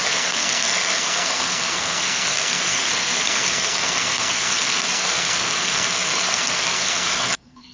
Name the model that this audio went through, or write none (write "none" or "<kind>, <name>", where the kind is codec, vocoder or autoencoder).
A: codec, SNAC